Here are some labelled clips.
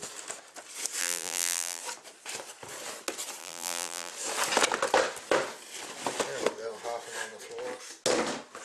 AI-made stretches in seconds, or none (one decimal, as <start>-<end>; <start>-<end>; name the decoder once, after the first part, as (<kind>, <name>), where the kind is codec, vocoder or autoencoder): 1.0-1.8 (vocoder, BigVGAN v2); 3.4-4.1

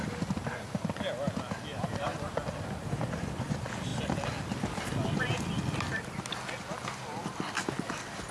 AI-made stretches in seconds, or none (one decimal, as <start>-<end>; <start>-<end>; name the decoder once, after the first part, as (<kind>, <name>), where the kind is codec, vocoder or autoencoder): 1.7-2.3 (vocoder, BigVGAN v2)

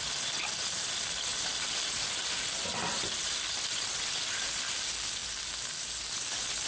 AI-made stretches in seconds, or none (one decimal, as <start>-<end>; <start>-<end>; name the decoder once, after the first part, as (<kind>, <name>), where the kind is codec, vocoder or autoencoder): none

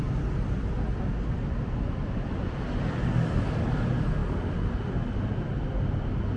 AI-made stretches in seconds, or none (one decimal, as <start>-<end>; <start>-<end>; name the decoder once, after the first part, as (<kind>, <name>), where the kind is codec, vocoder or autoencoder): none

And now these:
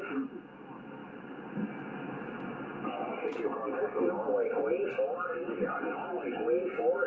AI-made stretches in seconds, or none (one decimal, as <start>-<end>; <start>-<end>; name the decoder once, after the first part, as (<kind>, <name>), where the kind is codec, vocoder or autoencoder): 1.0-1.9 (vocoder, BigVGAN v2)

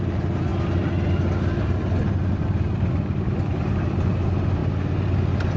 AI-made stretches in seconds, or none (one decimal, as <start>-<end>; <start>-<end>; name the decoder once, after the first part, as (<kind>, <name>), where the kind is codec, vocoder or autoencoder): 2.4-4.1 (vocoder, BigVGAN v2)